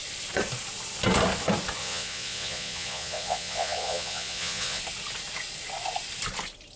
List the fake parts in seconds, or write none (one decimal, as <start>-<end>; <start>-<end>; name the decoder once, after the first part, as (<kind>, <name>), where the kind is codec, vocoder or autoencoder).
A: 1.8-4.8 (vocoder, Vocos)